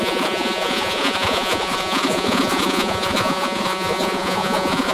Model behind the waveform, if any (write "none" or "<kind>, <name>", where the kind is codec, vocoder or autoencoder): vocoder, Vocos